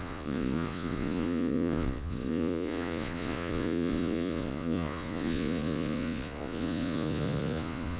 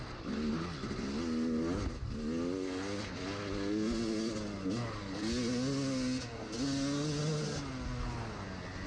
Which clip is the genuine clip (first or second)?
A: second